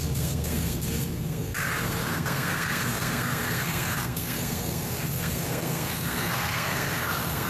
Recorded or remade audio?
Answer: remade